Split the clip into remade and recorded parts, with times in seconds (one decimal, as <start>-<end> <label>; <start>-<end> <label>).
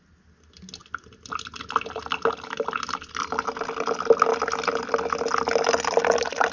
0.0-6.5 recorded